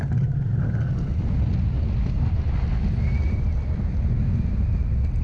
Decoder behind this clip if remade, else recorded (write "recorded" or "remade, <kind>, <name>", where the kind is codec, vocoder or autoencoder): recorded